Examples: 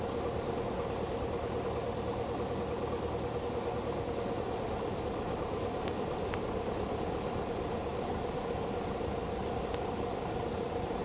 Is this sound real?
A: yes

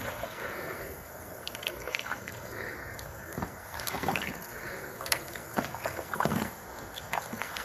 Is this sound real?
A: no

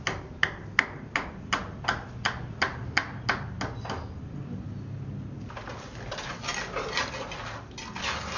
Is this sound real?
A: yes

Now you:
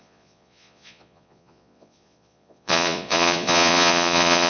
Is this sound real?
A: no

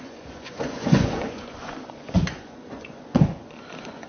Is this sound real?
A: no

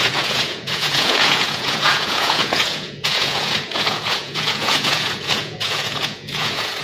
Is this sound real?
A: no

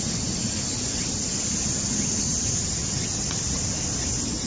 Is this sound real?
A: yes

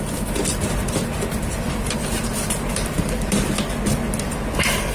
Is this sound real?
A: yes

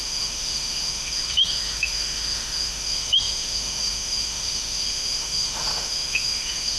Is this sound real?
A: no